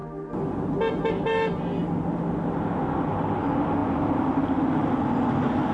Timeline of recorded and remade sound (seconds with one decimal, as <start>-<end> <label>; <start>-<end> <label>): 0.0-5.7 recorded